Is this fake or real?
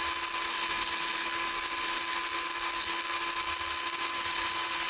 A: real